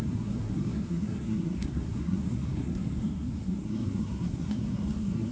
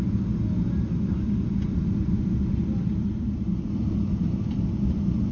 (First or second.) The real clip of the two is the second